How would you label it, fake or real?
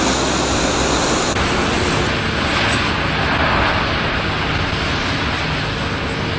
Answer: real